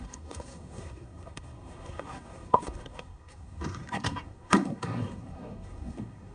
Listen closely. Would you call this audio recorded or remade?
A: remade